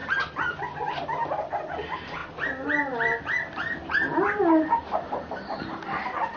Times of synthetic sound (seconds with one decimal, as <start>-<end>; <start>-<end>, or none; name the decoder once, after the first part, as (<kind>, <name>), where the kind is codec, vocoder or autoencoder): 4.8-5.6 (vocoder, BigVGAN v2)

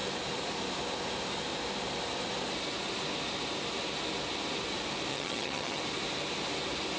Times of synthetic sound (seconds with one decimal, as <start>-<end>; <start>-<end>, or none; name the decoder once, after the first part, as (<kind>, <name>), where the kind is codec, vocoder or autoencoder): 5.1-5.8 (vocoder, HiFi-GAN)

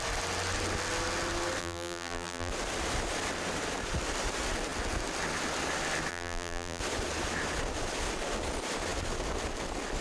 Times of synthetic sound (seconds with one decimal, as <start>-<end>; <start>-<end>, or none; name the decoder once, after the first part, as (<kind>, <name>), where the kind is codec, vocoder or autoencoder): 1.6-2.5 (vocoder, BigVGAN v2); 6.1-6.8